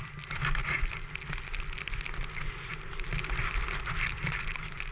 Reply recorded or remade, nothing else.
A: recorded